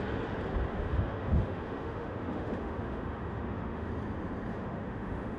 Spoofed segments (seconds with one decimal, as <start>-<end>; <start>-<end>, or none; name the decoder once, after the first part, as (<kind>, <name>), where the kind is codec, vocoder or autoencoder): 0.7-3.9 (autoencoder, DAC-VAE); 4.5-5.4